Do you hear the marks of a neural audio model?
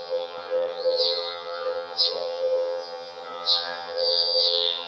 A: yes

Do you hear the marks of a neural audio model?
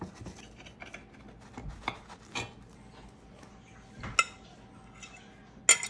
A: no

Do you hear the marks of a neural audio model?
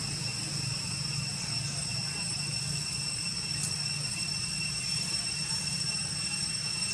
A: no